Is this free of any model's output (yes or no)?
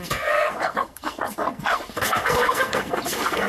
no